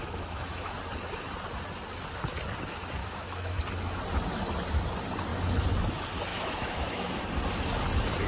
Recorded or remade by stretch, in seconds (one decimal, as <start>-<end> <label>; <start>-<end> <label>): 0.0-0.8 remade; 0.8-3.0 recorded; 3.0-3.6 remade; 3.6-6.3 recorded; 6.3-7.2 remade; 7.2-8.3 recorded